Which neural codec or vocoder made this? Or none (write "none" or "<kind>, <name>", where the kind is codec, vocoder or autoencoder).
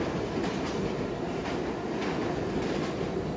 none